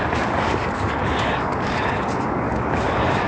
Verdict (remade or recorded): remade